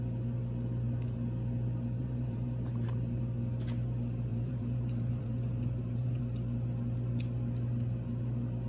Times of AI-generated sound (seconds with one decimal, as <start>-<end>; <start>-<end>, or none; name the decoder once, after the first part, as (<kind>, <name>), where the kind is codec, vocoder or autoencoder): 2.0-3.2 (vocoder, BigVGAN v2); 4.3-6.2